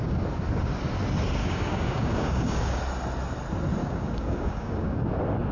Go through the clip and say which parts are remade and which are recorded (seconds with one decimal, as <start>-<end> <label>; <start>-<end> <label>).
0.0-1.4 recorded; 1.4-2.8 remade; 2.8-3.8 recorded; 3.8-5.1 remade; 5.1-5.5 recorded